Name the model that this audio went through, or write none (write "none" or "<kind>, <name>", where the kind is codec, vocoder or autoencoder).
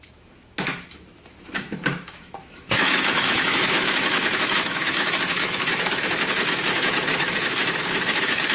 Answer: autoencoder, DAC-VAE